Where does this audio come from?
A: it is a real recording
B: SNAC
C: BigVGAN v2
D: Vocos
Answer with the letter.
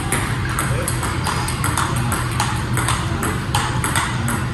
A